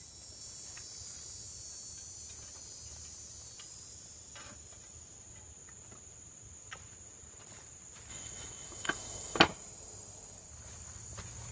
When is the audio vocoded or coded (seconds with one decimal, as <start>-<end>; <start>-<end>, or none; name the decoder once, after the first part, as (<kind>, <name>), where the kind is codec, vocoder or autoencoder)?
8.1-9.4 (autoencoder, DAC-VAE)